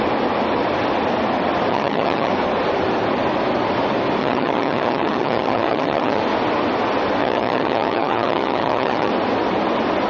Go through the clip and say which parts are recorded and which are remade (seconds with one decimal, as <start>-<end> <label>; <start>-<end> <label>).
0.0-1.7 recorded; 1.7-2.3 remade; 2.3-4.2 recorded; 4.2-6.2 remade; 6.2-7.2 recorded; 7.2-9.1 remade; 9.1-10.1 recorded